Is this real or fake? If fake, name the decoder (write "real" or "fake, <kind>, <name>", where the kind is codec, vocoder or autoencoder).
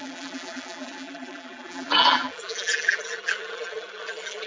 fake, vocoder, BigVGAN v2